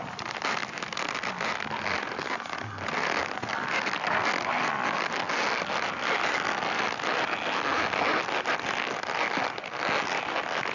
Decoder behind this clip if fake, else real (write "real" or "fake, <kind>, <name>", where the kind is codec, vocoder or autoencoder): real